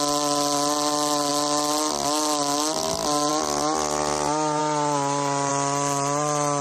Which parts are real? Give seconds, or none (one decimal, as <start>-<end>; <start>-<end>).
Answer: 0.0-6.6